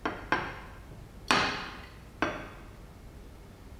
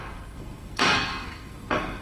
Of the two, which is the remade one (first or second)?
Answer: second